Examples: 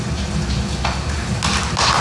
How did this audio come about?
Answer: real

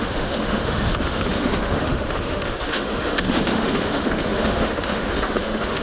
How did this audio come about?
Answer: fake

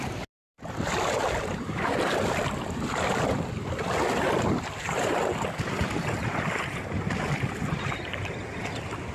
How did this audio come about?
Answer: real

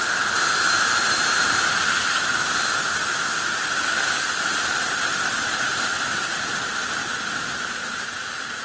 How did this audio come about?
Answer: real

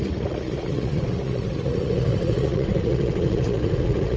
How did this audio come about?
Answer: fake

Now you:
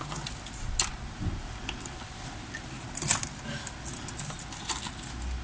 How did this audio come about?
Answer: real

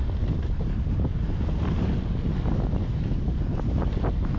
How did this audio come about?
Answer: real